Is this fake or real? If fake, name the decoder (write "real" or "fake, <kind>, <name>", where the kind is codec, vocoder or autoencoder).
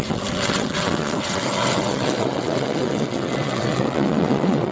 fake, vocoder, WaveNeXt